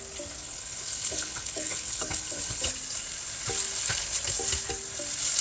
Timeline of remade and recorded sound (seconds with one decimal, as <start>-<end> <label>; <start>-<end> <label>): 0.0-0.4 recorded; 0.4-2.7 remade; 2.7-5.4 recorded